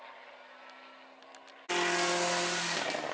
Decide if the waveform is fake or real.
real